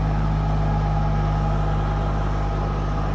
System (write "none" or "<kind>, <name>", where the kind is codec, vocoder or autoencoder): none